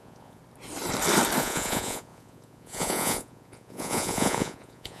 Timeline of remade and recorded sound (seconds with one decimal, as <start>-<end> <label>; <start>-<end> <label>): 0.0-0.4 remade; 0.4-1.4 recorded; 1.4-5.0 remade